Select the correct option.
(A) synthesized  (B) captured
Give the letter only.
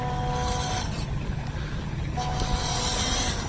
B